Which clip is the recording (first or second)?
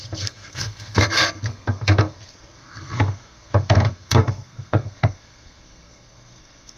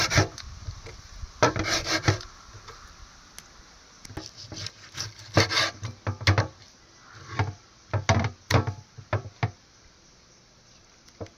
second